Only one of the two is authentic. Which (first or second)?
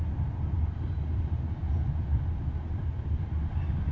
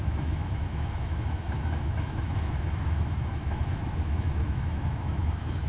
first